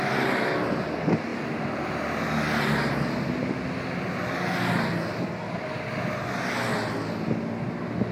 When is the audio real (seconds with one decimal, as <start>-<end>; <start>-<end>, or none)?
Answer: 0.0-8.1